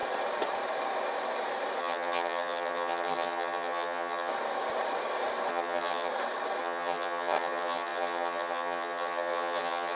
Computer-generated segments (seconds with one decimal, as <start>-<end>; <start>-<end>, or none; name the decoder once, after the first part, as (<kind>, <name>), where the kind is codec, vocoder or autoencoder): 1.8-4.3 (vocoder, HiFi-GAN); 5.5-6.1; 6.6-10.0